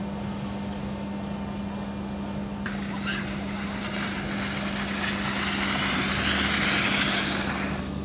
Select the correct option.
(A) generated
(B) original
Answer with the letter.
B